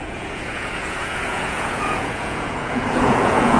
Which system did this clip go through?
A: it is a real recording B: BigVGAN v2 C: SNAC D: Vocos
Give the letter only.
D